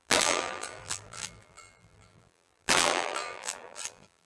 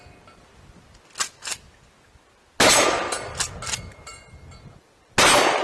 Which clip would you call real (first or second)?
second